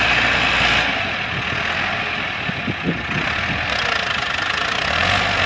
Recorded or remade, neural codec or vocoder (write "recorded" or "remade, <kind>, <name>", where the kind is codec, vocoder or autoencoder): recorded